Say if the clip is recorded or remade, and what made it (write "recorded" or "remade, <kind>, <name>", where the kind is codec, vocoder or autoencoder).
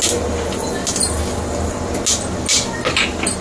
recorded